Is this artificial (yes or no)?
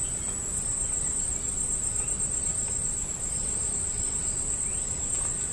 no